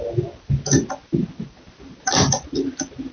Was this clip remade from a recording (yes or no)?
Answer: no